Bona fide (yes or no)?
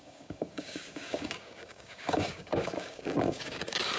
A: no